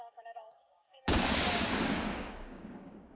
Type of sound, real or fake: fake